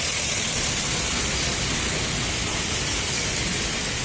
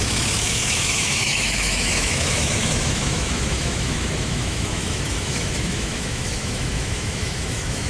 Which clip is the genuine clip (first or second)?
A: first